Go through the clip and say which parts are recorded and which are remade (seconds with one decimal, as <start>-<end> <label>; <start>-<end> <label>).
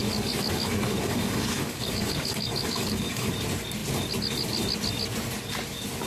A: 0.0-3.3 remade; 3.3-6.1 recorded